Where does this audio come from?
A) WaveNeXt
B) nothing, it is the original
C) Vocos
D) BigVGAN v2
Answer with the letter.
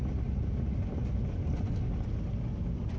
B